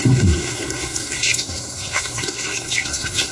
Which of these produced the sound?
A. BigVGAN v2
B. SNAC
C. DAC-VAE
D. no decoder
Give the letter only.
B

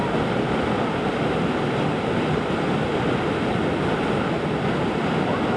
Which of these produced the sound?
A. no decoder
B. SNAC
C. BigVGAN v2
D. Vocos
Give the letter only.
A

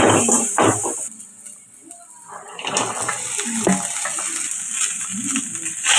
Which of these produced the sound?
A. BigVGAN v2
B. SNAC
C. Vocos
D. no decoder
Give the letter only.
D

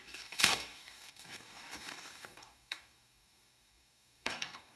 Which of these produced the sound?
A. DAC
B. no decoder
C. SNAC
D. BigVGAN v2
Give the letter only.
A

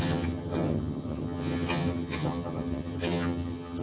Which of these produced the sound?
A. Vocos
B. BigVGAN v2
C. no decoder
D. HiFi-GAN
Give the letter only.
D